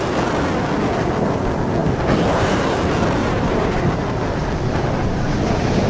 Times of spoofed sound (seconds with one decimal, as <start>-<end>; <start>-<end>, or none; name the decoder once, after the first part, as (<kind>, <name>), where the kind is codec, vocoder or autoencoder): 3.2-3.8 (vocoder, BigVGAN v2)